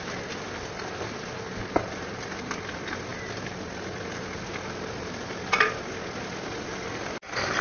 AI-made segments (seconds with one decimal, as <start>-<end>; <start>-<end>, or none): none